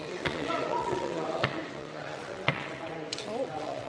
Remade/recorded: remade